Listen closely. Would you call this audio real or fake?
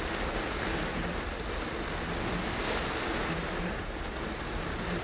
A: real